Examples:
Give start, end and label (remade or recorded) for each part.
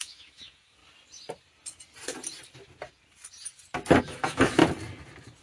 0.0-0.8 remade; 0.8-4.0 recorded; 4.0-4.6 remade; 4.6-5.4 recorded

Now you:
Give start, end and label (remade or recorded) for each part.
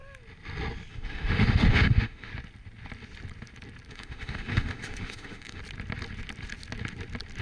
0.0-0.9 recorded; 0.9-2.3 remade; 2.3-3.9 recorded; 3.9-5.6 remade; 5.6-7.4 recorded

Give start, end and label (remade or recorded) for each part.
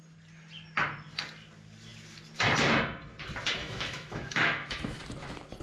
0.0-3.6 recorded; 3.6-5.0 remade; 5.0-5.6 recorded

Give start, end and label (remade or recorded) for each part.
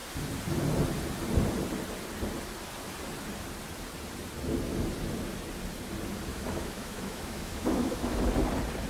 0.0-6.3 recorded; 6.3-8.2 remade; 8.2-8.9 recorded